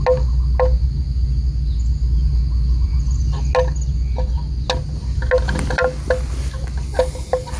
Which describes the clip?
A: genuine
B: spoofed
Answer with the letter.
A